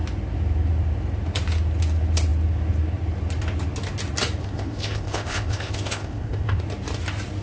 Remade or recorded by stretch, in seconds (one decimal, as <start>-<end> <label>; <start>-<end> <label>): 0.0-4.4 recorded; 4.4-6.6 remade; 6.6-7.4 recorded